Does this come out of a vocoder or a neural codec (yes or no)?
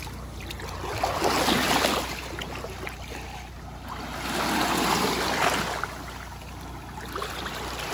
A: no